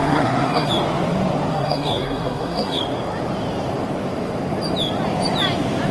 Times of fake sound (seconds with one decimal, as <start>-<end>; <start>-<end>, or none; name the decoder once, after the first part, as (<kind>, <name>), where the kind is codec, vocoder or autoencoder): 0.0-0.7 (codec, SNAC); 1.5-2.8

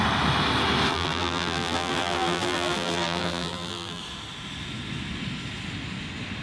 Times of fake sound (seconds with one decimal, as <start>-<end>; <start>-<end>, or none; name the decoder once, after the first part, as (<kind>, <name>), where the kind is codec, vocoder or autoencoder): 0.9-4.0 (vocoder, BigVGAN v2)